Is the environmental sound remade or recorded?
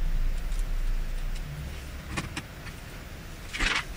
recorded